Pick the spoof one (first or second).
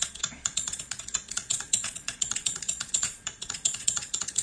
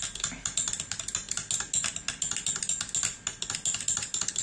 first